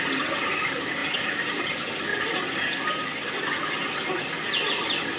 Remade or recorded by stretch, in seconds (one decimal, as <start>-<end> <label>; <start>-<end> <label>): 0.0-2.1 remade; 2.1-4.7 recorded; 4.7-5.2 remade